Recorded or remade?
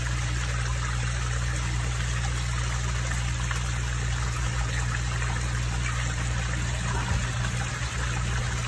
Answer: recorded